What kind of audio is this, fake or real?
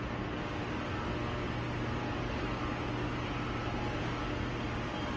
real